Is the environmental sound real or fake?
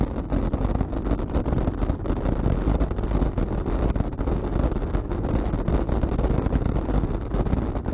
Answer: real